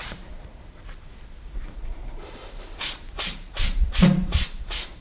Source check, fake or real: fake